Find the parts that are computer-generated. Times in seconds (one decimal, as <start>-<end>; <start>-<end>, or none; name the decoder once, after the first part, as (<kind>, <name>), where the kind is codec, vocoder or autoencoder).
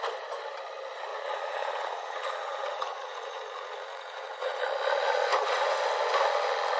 1.1-4.6 (vocoder, Vocos); 5.3-5.8